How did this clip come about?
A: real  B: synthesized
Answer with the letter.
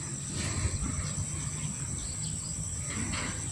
A